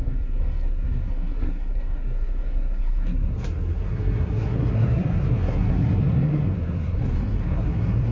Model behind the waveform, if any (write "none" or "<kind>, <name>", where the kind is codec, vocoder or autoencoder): codec, SNAC